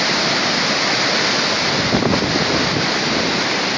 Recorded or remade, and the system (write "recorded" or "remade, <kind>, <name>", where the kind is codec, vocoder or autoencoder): recorded